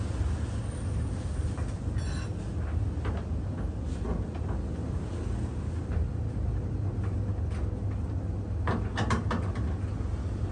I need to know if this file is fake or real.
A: real